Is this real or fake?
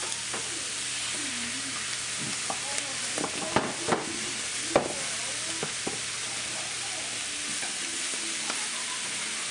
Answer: real